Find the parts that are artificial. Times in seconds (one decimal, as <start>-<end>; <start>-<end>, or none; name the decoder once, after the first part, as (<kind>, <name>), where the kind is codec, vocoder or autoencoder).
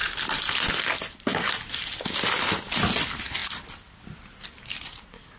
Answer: 1.3-1.8 (vocoder, BigVGAN v2)